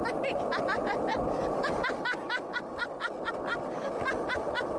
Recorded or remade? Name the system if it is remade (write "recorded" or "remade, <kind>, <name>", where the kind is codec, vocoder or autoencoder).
recorded